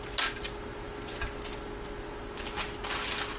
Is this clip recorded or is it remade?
recorded